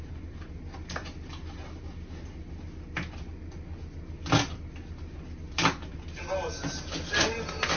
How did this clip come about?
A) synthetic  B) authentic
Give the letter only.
B